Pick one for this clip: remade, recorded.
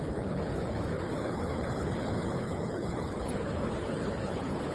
remade